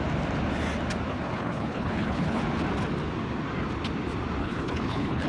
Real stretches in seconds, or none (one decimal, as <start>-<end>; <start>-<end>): 0.0-1.1; 2.4-4.4